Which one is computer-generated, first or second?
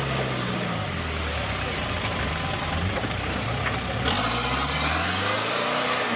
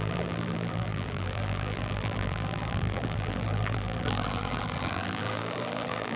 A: second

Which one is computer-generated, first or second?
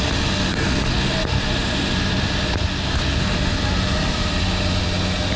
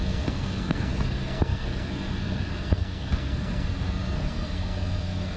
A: second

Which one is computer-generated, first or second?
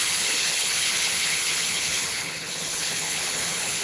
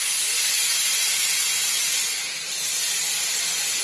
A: first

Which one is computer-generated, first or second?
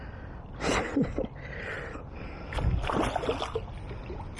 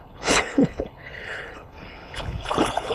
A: second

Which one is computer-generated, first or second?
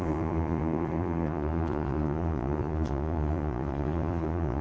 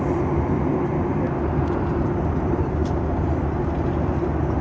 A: first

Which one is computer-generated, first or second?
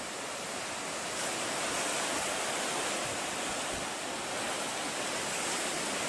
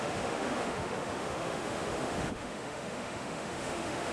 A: second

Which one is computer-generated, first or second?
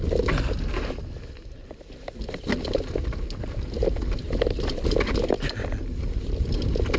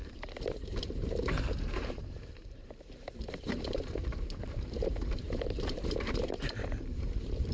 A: second